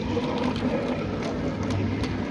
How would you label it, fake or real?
real